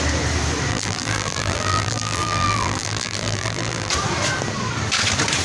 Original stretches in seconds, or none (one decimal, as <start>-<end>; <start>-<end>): 0.0-0.7; 3.9-5.4